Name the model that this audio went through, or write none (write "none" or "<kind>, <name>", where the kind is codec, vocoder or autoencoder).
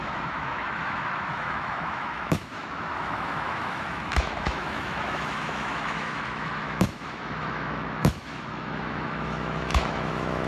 autoencoder, DAC-VAE